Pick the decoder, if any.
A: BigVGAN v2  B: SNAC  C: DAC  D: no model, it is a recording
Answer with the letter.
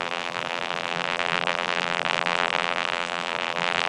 A